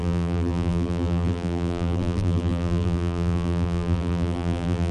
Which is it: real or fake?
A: fake